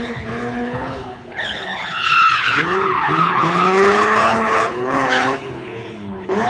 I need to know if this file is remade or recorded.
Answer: remade